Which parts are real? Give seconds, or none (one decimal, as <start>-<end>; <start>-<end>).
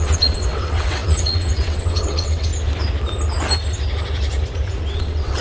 2.5-4.9